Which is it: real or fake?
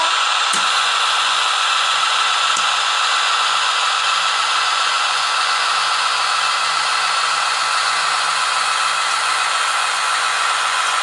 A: fake